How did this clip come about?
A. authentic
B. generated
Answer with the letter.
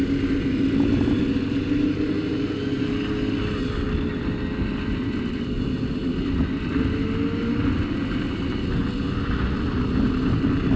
A